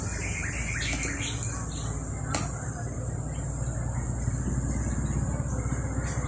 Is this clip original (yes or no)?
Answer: yes